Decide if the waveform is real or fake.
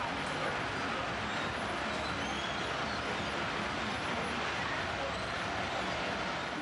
real